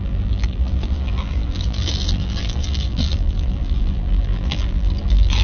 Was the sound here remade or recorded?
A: remade